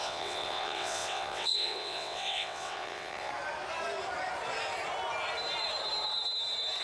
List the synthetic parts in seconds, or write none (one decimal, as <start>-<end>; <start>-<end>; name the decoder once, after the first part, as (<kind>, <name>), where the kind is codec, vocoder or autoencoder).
0.0-3.3 (vocoder, WaveNeXt)